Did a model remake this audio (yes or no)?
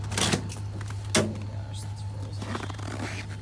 no